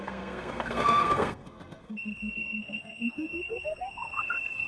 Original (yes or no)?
no